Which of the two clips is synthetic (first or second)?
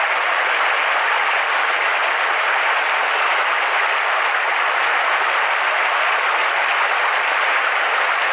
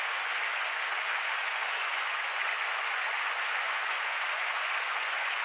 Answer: second